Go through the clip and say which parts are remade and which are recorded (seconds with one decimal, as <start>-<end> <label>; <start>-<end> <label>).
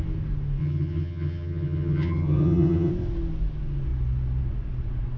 0.0-0.6 recorded; 0.6-2.9 remade; 2.9-5.2 recorded